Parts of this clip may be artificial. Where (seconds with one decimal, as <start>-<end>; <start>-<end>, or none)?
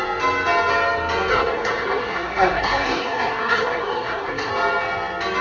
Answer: 1.3-4.5